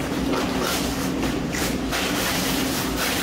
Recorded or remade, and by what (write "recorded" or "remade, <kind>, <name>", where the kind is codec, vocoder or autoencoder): remade, vocoder, BigVGAN v2